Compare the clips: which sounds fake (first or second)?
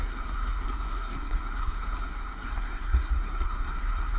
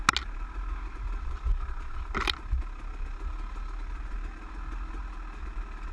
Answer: first